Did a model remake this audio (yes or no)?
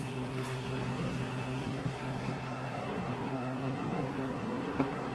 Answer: yes